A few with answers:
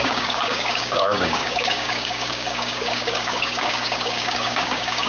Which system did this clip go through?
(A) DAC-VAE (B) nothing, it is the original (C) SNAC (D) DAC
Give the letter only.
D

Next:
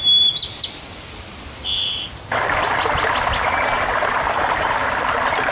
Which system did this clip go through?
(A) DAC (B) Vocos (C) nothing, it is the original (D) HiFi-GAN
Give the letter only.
C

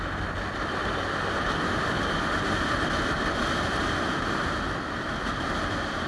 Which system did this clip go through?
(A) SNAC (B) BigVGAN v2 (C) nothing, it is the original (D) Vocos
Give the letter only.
C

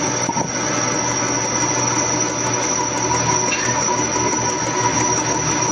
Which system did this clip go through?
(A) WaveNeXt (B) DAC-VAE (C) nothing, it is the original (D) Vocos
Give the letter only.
C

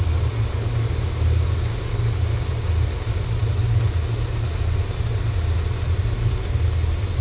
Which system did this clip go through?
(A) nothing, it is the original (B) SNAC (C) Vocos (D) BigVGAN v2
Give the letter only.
A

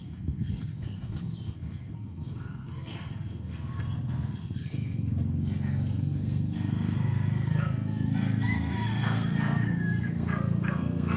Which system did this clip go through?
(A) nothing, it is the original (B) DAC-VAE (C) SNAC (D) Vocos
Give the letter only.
C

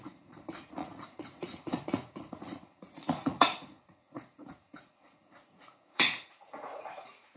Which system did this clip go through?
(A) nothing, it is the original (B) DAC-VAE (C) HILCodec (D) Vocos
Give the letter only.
D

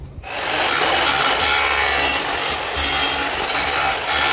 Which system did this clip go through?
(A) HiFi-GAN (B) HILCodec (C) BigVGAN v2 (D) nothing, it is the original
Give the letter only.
D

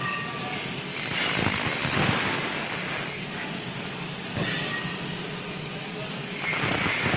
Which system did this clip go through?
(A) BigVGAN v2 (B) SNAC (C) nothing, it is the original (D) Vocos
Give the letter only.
C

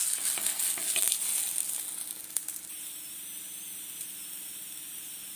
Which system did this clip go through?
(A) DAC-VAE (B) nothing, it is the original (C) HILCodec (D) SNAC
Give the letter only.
B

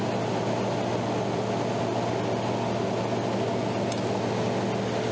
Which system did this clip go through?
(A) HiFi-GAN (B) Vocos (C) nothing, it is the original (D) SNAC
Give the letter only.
C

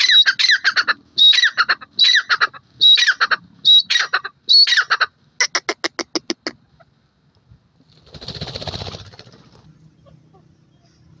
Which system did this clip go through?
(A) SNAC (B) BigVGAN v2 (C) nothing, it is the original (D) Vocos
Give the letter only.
C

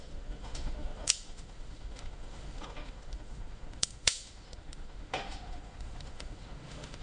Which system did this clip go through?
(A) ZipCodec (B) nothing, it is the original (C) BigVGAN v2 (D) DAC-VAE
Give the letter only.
D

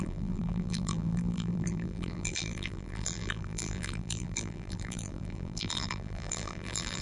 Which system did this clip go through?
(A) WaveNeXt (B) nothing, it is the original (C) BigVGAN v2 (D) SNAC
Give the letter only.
C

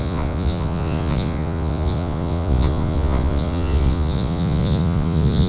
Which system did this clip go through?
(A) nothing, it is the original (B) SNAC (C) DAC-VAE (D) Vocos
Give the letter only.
D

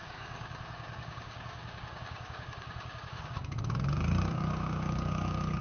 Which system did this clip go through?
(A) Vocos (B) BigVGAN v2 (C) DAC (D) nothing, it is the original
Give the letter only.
C